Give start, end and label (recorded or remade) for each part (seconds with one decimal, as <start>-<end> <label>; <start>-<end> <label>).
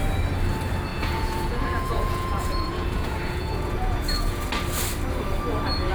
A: 0.0-0.9 recorded; 0.9-4.4 remade; 4.4-5.9 recorded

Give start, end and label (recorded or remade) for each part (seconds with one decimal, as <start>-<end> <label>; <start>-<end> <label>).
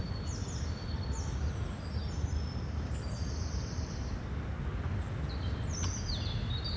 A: 0.0-6.8 recorded